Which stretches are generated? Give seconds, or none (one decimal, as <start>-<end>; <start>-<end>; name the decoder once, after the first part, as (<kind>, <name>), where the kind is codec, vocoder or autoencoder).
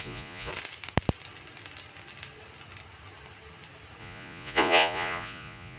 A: 0.0-0.5 (vocoder, Vocos); 4.0-5.8